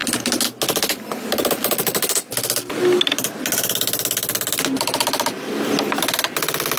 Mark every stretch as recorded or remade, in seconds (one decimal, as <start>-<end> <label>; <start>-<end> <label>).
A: 0.0-6.8 recorded